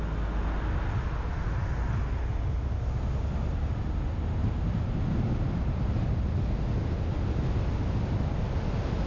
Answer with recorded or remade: recorded